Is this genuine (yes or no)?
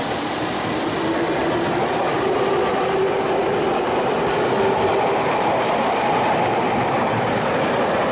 no